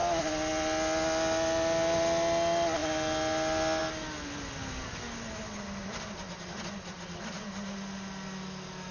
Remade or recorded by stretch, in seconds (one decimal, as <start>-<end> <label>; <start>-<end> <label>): 0.0-8.9 recorded